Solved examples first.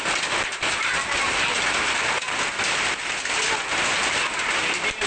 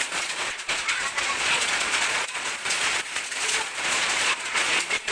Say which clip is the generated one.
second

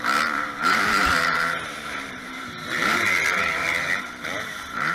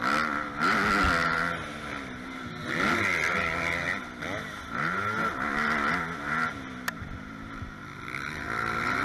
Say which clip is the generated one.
first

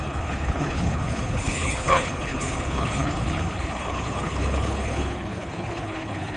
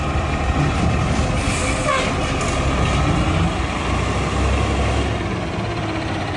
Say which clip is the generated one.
first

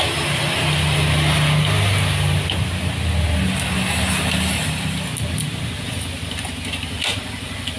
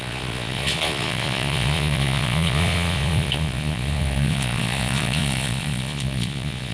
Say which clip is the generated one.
second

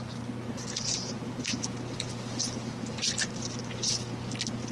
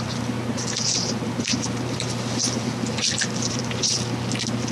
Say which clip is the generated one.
second